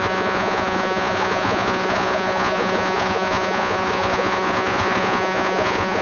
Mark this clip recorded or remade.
remade